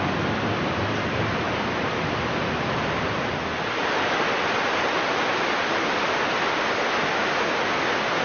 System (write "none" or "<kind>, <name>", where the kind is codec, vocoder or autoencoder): none